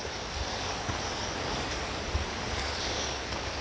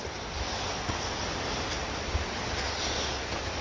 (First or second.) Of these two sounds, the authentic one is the second